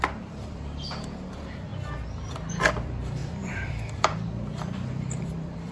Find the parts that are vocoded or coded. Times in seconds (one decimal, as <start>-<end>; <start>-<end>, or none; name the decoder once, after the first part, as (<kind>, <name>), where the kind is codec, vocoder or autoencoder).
0.0-1.7 (vocoder, BigVGAN v2); 2.7-5.7